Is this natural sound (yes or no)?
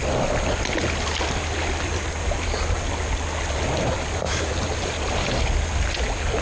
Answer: yes